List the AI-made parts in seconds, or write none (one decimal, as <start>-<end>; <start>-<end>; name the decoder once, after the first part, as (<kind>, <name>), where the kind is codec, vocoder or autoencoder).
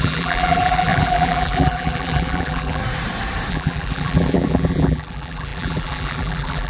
0.0-2.8 (vocoder, BigVGAN v2); 3.5-6.7